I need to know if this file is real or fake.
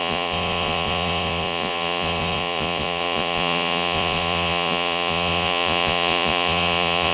fake